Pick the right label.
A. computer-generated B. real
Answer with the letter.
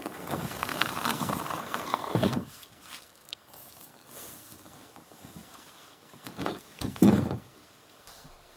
A